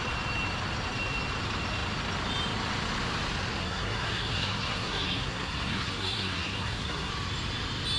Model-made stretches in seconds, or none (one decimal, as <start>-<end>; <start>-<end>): 3.6-7.1